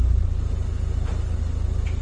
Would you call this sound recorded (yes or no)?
yes